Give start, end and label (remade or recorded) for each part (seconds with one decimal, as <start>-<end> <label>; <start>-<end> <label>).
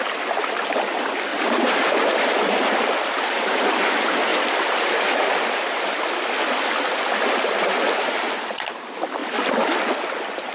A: 0.0-1.3 recorded; 1.3-1.9 remade; 1.9-10.5 recorded